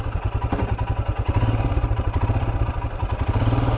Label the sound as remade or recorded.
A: recorded